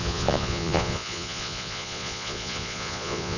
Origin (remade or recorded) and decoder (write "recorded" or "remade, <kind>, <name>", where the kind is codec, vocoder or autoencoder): remade, vocoder, Vocos